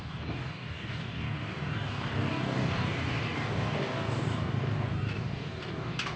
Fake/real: fake